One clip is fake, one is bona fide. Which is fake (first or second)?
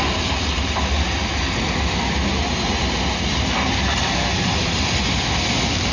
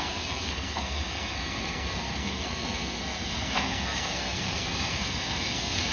second